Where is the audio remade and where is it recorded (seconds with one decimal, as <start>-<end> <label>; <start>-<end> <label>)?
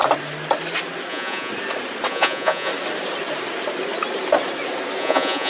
0.0-1.1 recorded; 1.1-1.5 remade; 1.5-2.1 recorded; 2.1-2.7 remade; 2.7-5.0 recorded; 5.0-5.5 remade